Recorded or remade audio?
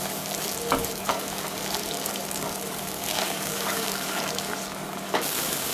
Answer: remade